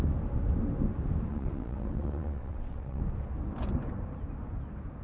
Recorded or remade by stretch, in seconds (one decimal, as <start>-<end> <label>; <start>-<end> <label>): 0.0-1.3 recorded; 1.3-3.0 remade; 3.0-5.0 recorded